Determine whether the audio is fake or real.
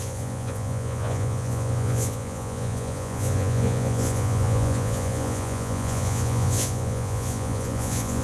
fake